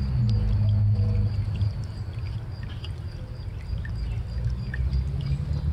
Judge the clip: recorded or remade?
recorded